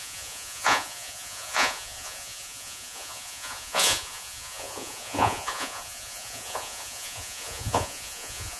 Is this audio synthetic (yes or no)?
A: yes